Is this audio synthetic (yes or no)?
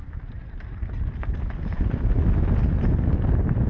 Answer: no